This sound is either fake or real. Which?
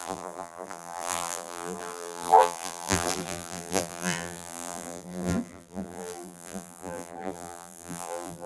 fake